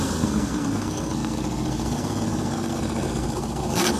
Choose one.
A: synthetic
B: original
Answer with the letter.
A